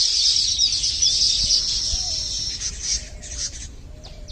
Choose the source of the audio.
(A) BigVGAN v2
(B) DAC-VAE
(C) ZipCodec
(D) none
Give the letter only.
D